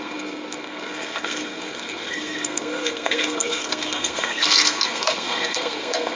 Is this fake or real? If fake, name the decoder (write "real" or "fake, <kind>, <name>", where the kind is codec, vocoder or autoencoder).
fake, codec, SNAC